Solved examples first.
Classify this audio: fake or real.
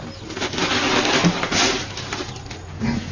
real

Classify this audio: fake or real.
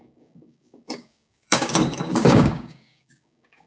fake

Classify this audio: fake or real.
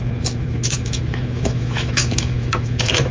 fake